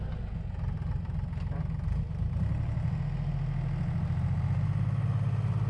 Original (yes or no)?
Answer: yes